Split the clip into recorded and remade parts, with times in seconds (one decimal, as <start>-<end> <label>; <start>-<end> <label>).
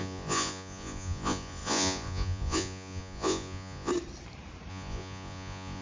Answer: 0.0-3.9 remade; 3.9-4.7 recorded; 4.7-5.8 remade